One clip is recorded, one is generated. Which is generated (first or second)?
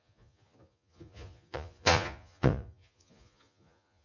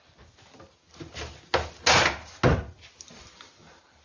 first